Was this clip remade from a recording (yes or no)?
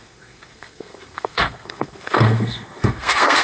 yes